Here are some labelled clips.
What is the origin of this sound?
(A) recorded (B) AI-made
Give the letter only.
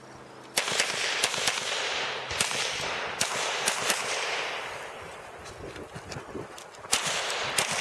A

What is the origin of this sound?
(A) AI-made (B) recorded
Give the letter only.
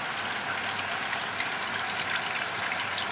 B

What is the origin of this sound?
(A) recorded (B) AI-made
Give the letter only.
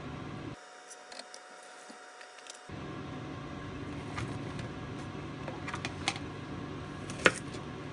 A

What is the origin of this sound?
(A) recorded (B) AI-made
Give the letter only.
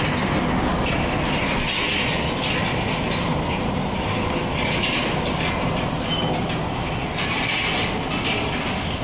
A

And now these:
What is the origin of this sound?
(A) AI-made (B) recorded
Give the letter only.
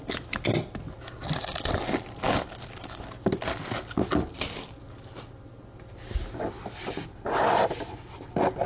B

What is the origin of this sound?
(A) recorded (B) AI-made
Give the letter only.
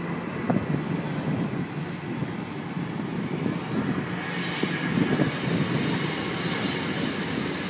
A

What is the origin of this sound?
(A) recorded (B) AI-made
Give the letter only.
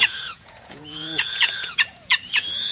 B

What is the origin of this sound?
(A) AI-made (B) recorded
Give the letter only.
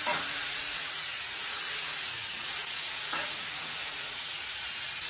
A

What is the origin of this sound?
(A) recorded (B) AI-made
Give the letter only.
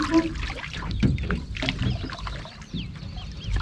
A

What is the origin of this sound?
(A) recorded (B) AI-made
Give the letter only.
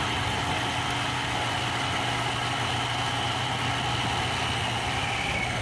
A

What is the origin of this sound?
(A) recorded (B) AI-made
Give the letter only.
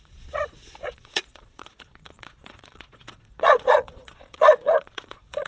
B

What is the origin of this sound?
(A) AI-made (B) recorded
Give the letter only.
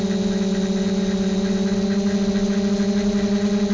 B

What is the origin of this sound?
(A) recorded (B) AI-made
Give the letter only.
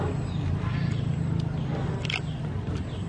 A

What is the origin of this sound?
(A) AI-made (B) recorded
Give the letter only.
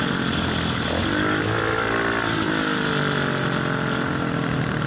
B